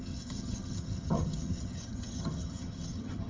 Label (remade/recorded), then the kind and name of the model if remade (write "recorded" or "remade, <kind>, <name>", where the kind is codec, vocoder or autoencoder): remade, vocoder, HiFi-GAN